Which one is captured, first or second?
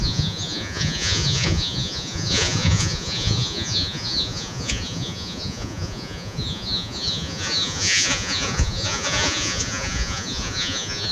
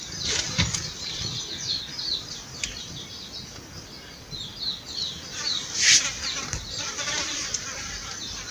second